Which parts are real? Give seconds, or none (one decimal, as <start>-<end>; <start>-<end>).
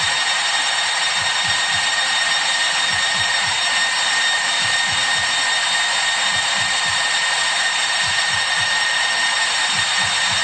none